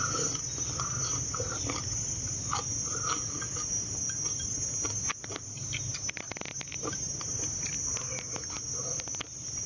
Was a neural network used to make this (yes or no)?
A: no